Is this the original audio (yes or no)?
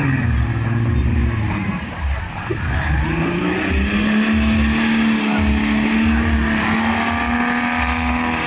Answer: yes